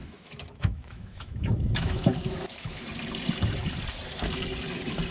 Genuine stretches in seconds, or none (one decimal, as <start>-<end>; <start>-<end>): 2.8-5.1